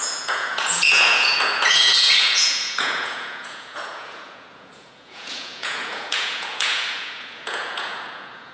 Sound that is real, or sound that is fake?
fake